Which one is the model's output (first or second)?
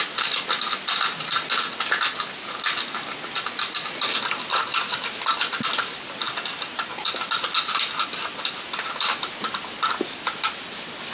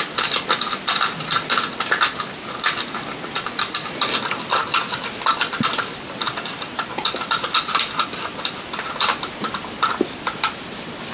second